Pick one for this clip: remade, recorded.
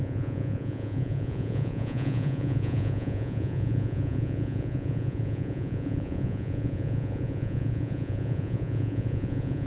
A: remade